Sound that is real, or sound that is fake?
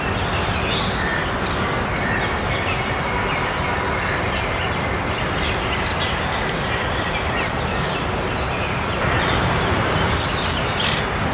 real